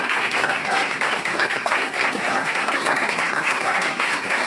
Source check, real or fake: fake